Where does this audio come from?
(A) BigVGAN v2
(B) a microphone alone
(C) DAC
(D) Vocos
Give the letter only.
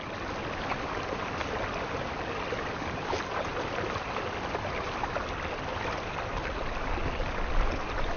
B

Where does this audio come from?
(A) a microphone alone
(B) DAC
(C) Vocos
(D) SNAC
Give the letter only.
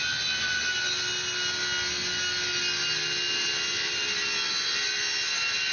A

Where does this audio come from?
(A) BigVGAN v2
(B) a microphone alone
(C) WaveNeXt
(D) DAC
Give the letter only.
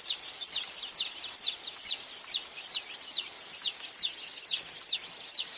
B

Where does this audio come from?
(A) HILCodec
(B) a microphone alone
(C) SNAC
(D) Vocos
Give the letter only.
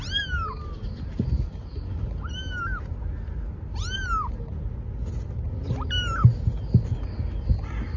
B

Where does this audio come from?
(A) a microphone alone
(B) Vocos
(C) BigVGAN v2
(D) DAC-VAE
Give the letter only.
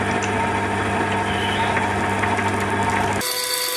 A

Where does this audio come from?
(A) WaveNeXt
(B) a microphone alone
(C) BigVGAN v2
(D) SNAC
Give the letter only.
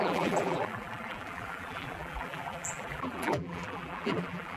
C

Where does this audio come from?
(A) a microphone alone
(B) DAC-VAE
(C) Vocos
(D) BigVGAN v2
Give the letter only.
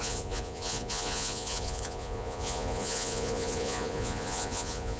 C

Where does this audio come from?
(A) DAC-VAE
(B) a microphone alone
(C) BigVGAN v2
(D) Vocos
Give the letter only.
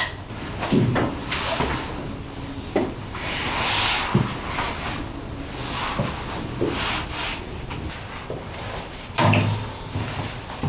B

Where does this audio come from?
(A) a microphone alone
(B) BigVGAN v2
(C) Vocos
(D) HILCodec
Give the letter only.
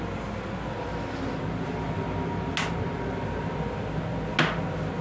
A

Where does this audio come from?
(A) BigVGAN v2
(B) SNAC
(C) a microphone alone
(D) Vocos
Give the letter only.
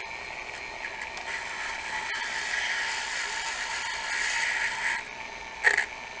C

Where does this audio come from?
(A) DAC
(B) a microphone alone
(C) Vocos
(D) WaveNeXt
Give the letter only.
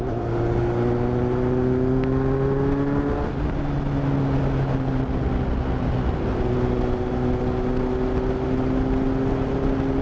B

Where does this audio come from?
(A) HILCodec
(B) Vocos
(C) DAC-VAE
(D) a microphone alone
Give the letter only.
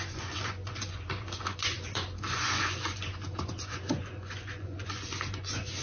B